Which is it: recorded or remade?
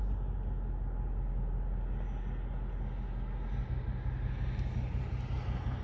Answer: recorded